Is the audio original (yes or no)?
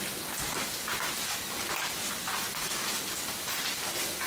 yes